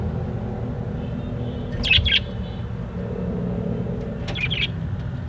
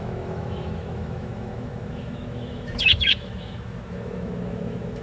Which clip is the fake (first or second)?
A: second